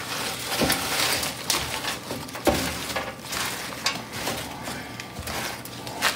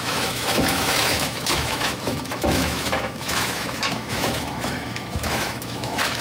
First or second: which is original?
first